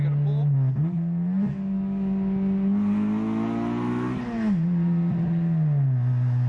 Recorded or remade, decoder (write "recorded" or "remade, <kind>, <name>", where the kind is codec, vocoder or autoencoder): recorded